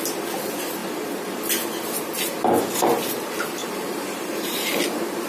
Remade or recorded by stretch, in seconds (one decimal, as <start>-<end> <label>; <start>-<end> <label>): 0.0-0.8 recorded; 0.8-1.4 remade; 1.4-3.6 recorded; 3.6-4.8 remade; 4.8-5.3 recorded